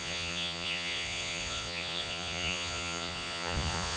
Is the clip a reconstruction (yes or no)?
yes